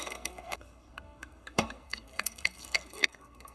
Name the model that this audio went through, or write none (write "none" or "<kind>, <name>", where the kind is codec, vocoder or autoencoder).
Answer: codec, SNAC